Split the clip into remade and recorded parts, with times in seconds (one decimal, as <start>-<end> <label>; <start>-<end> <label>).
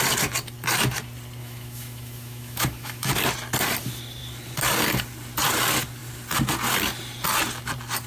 0.0-1.4 recorded; 1.4-3.1 remade; 3.1-8.1 recorded